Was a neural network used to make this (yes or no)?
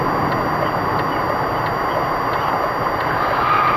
no